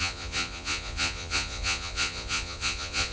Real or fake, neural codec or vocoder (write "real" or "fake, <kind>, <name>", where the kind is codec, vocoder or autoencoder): fake, vocoder, Vocos